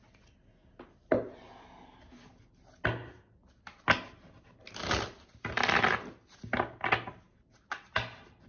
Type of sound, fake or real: real